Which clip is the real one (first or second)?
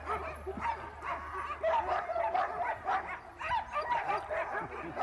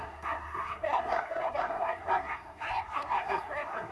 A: first